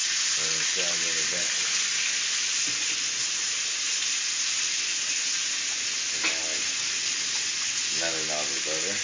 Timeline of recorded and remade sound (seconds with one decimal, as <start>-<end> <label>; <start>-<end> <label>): 0.0-9.0 recorded